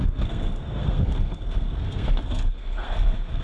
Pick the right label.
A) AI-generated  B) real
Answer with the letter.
A